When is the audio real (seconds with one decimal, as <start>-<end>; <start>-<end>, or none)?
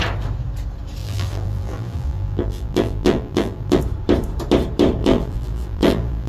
0.0-1.0; 3.8-5.0